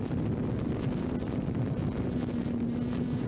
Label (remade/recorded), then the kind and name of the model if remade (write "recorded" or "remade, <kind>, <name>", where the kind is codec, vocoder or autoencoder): recorded